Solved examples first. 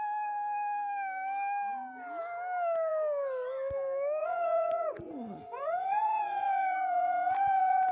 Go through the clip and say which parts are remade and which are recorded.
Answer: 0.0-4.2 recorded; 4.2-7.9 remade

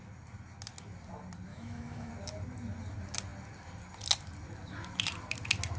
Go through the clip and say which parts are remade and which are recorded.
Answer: 0.0-1.5 recorded; 1.5-2.1 remade; 2.1-5.8 recorded

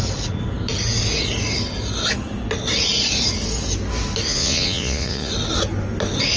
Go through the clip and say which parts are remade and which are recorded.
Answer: 0.0-4.3 recorded; 4.3-5.3 remade; 5.3-6.4 recorded

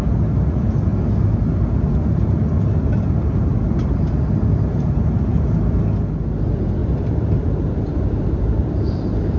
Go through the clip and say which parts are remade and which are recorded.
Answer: 0.0-6.8 recorded; 6.8-9.4 remade